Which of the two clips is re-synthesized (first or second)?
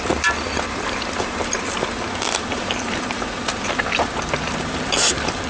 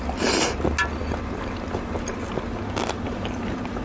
first